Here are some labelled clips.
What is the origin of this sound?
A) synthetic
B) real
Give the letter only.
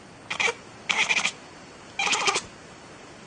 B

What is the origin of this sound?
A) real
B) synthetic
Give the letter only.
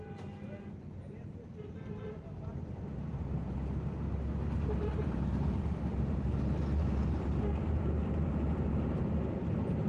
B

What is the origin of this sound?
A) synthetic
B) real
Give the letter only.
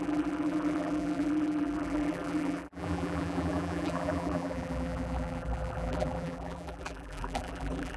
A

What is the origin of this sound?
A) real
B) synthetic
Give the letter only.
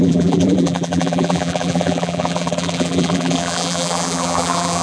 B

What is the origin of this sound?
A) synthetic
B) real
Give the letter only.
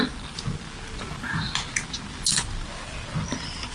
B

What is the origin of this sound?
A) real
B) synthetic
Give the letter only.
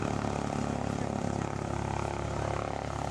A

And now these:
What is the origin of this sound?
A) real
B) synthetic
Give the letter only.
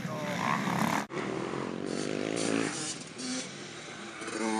B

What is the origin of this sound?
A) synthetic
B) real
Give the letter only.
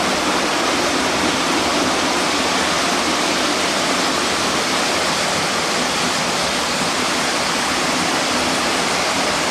A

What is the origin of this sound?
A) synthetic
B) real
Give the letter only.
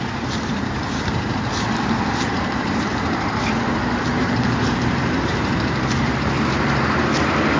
A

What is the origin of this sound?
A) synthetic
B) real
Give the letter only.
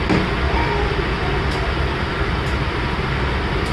B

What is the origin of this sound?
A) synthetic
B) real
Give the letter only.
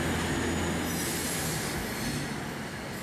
B